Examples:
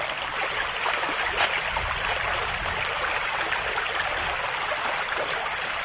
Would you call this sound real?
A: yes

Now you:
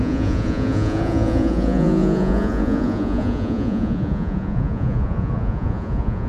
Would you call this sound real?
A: no